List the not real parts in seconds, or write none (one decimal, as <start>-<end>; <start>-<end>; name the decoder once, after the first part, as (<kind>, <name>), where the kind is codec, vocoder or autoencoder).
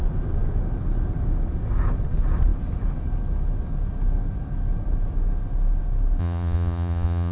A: 6.2-7.3 (vocoder, Vocos)